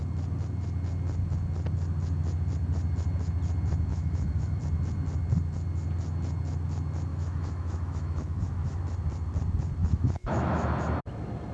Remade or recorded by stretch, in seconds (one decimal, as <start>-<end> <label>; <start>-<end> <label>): 0.0-3.9 recorded; 3.9-4.6 remade; 4.6-7.1 recorded; 7.1-8.8 remade; 8.8-9.8 recorded; 9.8-10.6 remade; 10.6-11.5 recorded